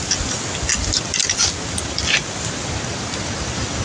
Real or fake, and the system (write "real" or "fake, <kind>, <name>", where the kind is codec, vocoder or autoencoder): real